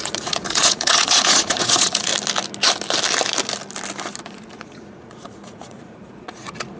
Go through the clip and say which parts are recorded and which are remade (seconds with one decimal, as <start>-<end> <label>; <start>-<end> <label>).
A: 0.0-2.1 remade; 2.1-4.2 recorded; 4.2-6.8 remade